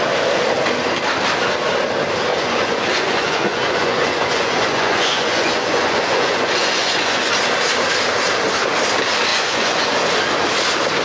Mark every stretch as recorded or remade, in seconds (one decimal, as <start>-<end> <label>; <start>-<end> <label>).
0.0-2.3 recorded; 2.3-7.3 remade; 7.3-9.3 recorded; 9.3-10.0 remade; 10.0-11.0 recorded